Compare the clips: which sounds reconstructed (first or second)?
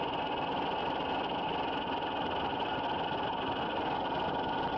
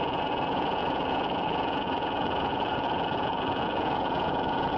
second